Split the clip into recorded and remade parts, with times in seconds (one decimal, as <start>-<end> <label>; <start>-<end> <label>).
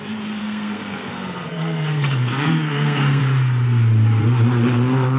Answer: 0.0-0.4 recorded; 0.4-3.2 remade; 3.2-5.2 recorded